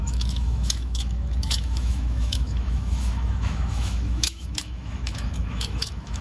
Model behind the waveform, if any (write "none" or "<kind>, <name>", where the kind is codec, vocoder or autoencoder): autoencoder, DAC-VAE